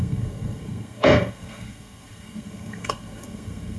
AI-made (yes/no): yes